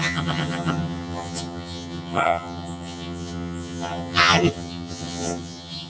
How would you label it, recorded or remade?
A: remade